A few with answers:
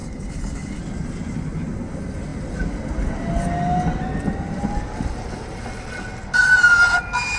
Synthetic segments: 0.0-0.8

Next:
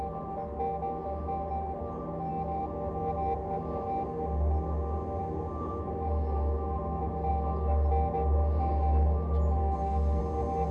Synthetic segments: 9.6-10.2

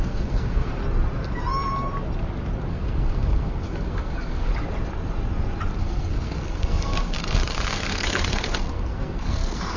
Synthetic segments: 0.0-0.8; 2.7-4.5; 5.8-9.8

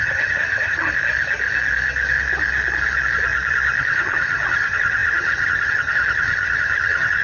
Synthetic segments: 0.0-0.9; 3.8-7.2

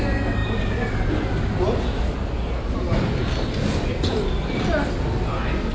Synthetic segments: none

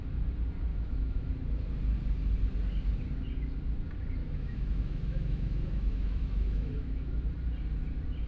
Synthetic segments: 0.7-1.3; 4.2-7.2